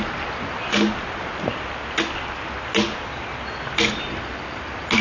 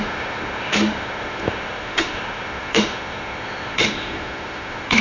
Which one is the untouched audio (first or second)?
first